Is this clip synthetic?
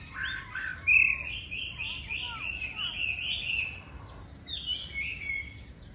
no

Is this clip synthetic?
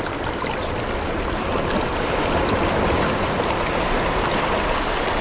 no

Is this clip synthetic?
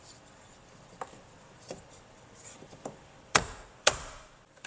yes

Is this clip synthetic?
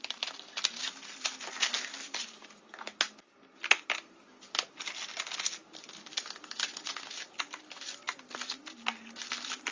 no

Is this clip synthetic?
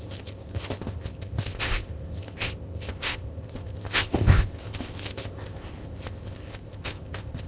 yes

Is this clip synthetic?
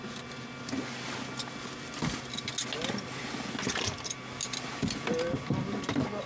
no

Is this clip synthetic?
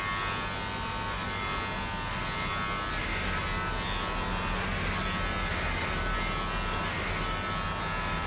no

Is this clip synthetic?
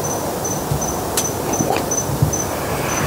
no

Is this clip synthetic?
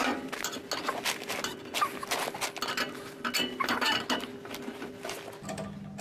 no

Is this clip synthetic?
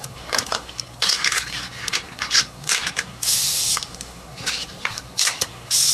yes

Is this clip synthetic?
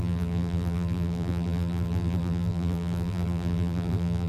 yes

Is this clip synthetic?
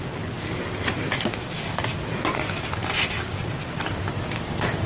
no